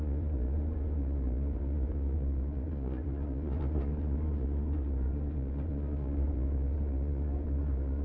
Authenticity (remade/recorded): remade